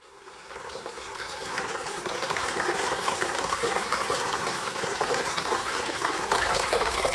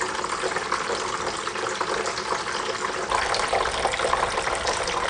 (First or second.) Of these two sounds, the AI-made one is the first